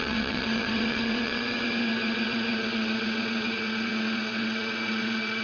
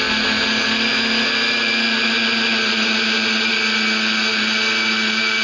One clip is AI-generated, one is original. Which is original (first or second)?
second